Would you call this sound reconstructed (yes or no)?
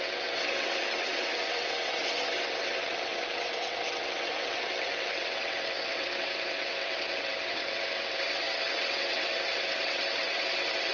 yes